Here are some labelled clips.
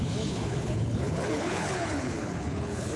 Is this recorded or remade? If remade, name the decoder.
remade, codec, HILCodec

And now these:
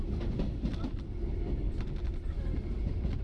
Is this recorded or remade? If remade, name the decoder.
recorded